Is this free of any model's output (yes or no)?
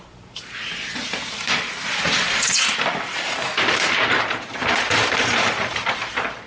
no